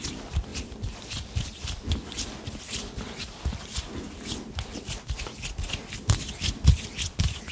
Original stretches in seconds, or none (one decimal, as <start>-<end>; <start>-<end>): 0.0-7.5

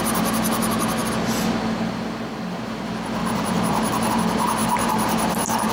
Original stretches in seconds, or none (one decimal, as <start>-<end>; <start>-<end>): 0.0-3.2; 4.1-4.6

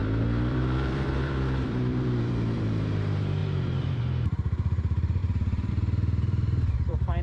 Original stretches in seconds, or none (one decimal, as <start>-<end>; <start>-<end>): none

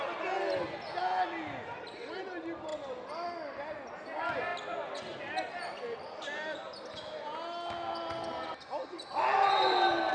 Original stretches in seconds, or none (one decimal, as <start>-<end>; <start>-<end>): 0.0-10.1